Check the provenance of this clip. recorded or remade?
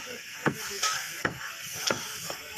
remade